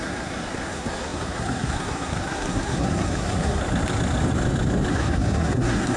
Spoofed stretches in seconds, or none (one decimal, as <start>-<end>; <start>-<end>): 0.0-3.6; 4.9-6.0